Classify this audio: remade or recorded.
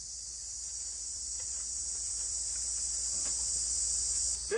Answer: remade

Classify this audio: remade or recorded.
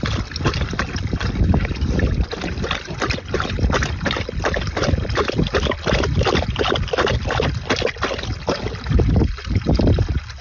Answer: recorded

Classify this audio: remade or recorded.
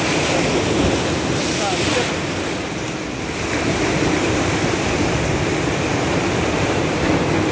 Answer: recorded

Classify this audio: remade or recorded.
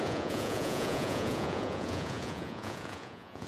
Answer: remade